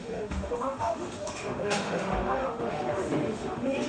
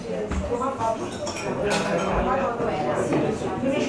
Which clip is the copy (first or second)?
first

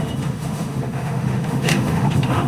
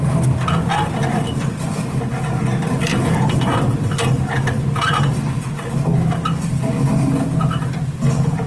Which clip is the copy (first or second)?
first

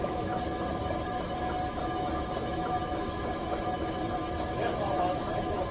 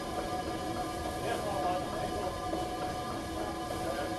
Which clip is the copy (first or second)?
first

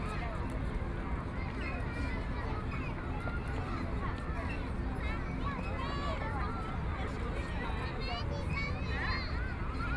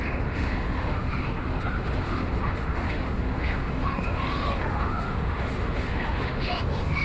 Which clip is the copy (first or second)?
second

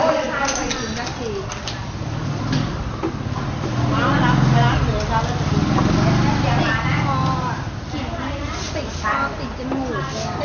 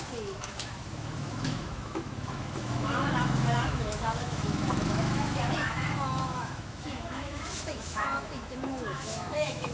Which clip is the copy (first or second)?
second